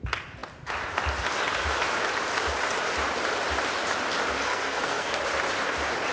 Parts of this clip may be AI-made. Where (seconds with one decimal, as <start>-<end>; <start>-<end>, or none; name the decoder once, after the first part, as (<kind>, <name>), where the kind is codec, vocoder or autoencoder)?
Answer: 4.5-5.2 (codec, SNAC)